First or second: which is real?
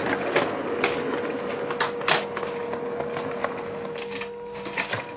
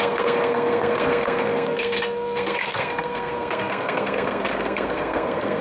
first